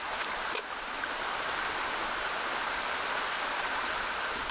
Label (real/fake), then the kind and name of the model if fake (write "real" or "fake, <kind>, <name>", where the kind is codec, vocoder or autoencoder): real